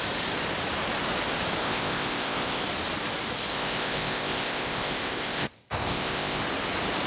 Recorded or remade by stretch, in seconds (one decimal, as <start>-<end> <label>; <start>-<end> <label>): 0.0-1.6 recorded; 1.6-2.6 remade; 2.6-3.5 recorded; 3.5-6.4 remade; 6.4-7.1 recorded